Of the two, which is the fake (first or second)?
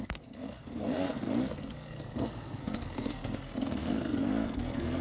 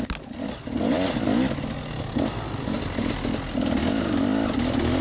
first